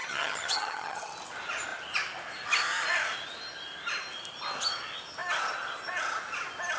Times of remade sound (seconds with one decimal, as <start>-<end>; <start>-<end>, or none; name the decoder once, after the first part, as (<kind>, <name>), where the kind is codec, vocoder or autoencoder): 0.0-1.1 (vocoder, HiFi-GAN)